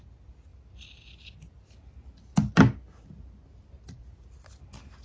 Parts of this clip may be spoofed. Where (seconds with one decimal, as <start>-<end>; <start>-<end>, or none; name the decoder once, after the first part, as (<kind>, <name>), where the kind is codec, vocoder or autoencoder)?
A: none